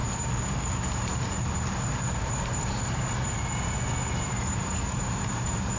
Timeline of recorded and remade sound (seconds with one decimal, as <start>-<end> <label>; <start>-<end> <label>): 0.0-3.5 remade; 3.5-4.0 recorded; 4.0-5.8 remade